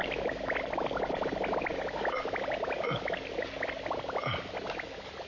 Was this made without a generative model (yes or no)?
yes